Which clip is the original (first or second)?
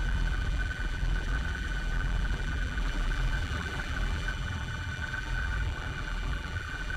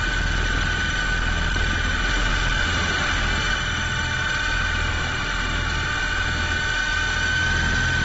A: second